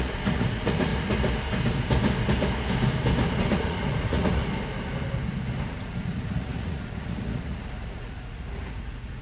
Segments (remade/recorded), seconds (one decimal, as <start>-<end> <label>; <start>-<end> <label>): 0.0-0.9 remade; 0.9-3.4 recorded; 3.4-4.4 remade; 4.4-5.7 recorded; 5.7-9.2 remade